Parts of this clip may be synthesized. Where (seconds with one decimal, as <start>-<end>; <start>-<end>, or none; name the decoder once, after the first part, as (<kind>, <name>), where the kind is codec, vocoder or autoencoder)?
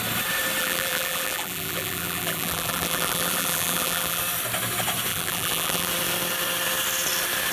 0.6-4.2 (vocoder, BigVGAN v2); 5.1-5.9